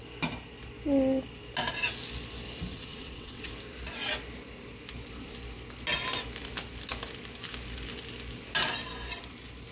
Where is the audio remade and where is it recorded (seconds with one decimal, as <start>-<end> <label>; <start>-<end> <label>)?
0.0-2.7 recorded; 2.7-3.5 remade; 3.5-9.7 recorded